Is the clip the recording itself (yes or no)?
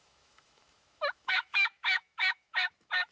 no